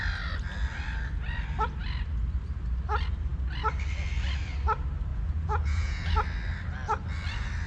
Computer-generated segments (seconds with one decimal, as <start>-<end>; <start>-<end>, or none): 5.1-6.1